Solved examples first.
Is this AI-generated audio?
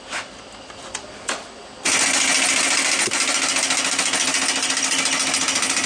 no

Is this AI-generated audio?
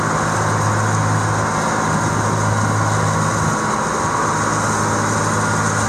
no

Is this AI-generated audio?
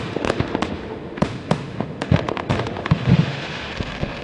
yes